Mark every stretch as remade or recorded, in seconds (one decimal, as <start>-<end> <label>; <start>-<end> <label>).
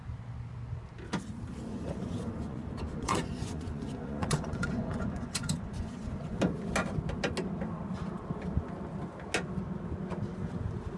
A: 0.0-1.7 recorded; 1.7-6.4 remade; 6.4-11.0 recorded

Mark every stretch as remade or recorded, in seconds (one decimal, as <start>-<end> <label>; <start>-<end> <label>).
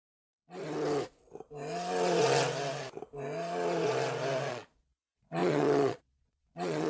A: 0.0-0.4 remade; 0.4-4.5 recorded; 4.5-6.9 remade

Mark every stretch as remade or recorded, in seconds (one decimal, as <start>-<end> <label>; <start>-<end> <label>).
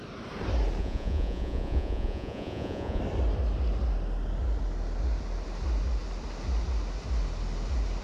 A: 0.0-0.8 recorded; 0.8-3.0 remade; 3.0-8.0 recorded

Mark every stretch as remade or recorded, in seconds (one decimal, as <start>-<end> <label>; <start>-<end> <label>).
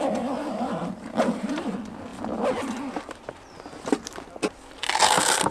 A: 0.0-5.5 recorded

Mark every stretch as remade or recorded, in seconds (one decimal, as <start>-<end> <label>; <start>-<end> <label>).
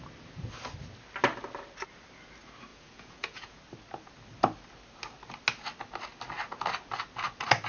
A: 0.0-2.7 recorded; 2.7-3.6 remade; 3.6-7.7 recorded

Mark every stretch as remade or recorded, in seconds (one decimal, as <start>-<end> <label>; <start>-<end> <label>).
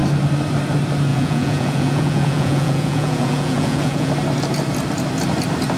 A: 0.0-1.1 recorded; 1.1-4.1 remade; 4.1-5.8 recorded